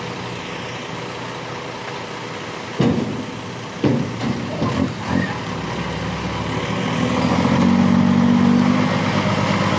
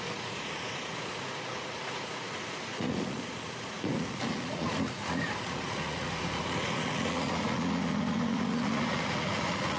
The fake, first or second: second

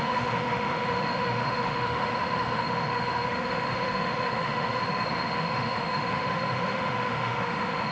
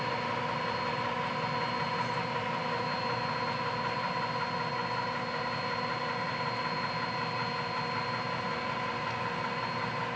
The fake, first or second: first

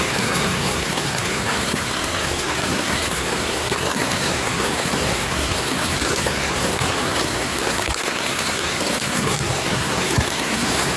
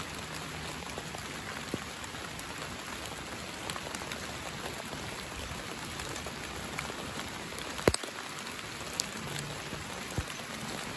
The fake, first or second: first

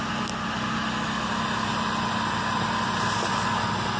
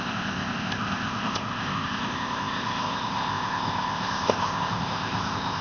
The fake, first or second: second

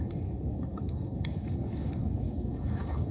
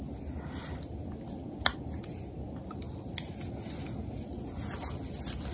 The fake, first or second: first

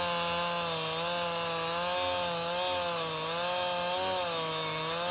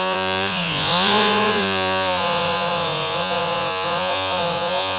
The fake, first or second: second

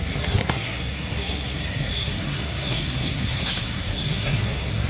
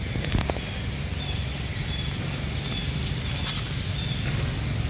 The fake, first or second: first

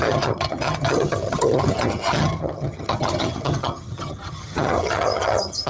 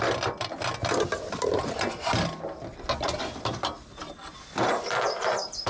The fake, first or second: first